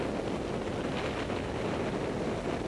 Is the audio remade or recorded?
recorded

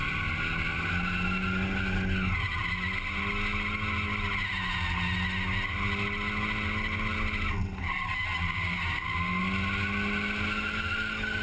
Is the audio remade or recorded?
recorded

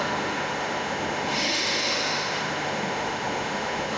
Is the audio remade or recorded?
remade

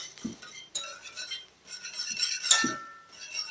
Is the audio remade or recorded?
recorded